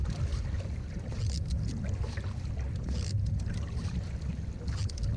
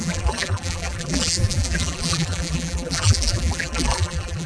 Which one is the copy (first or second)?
second